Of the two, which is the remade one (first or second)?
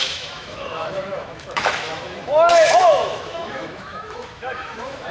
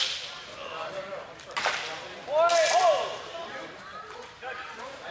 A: first